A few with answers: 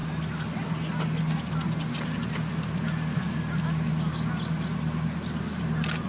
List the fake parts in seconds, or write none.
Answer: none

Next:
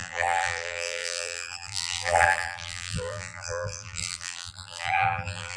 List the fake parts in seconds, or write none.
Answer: 0.0-5.6

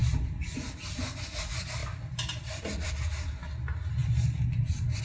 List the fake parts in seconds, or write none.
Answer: 0.0-0.7; 1.8-2.9; 4.0-5.0